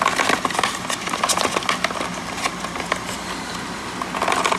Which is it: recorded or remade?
recorded